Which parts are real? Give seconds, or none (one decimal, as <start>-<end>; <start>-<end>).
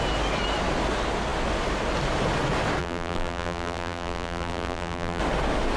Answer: 0.0-2.8; 5.2-5.8